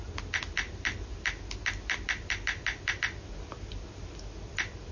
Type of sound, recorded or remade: recorded